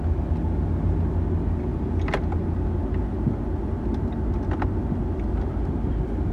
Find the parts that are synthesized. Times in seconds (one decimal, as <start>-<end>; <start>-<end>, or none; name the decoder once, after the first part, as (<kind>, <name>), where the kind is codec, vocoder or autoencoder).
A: none